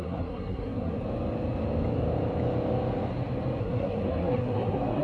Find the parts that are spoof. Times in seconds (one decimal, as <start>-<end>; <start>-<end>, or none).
0.0-1.0; 3.6-5.0